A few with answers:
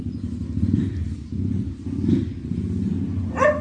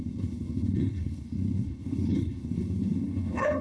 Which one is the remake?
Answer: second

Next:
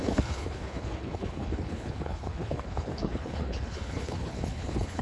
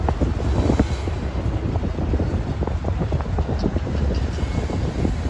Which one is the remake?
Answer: first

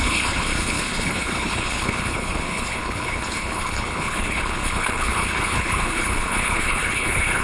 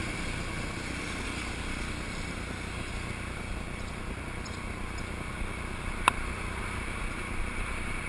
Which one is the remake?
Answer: first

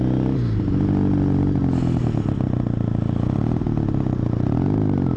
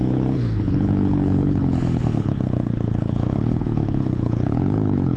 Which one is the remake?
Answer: second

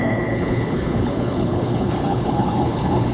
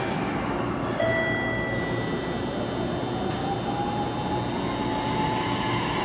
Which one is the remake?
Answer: first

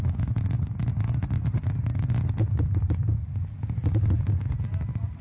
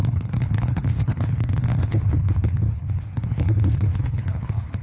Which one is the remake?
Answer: second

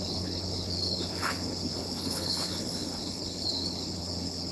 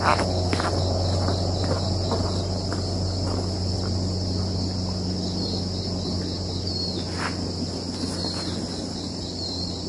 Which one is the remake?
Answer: first